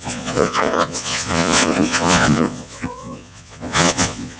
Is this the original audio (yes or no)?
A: no